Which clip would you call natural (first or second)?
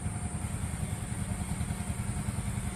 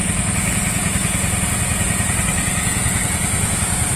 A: first